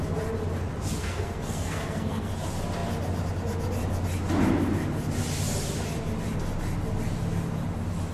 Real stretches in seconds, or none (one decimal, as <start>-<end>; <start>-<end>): 0.0-1.0; 2.3-8.1